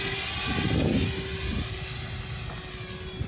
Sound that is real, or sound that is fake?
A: real